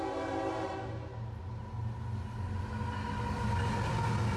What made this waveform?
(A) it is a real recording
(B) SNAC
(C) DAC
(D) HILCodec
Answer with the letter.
A